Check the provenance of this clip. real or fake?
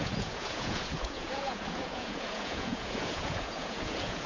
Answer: fake